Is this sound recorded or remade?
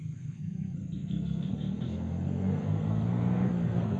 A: remade